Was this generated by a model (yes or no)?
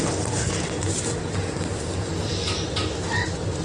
no